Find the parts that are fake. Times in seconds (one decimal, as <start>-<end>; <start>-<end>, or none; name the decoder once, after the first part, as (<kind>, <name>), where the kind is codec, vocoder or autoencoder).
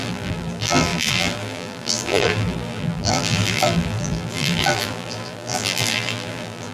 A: 0.0-6.7 (vocoder, BigVGAN v2)